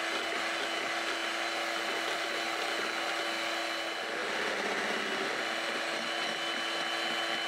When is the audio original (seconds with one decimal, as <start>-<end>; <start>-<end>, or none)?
0.0-7.5